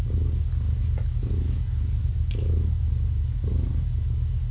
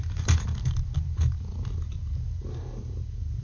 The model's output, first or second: second